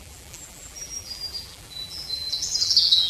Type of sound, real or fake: fake